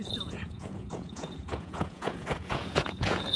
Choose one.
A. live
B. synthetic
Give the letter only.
B